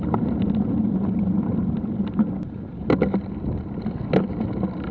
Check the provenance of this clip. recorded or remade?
recorded